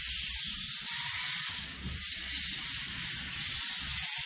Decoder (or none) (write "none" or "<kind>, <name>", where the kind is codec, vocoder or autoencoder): none